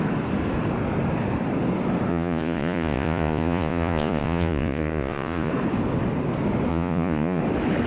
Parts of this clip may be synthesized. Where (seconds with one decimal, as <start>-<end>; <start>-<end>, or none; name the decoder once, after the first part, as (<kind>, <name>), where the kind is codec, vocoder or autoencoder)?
2.1-5.5 (vocoder, Vocos); 6.7-7.4